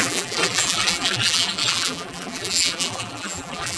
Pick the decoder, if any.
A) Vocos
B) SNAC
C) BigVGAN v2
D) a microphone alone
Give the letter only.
C